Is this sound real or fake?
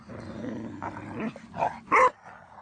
real